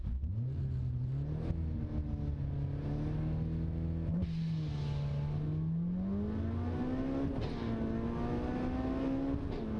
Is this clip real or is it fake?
real